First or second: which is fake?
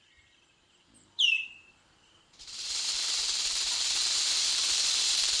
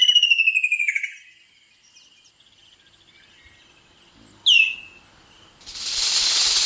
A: first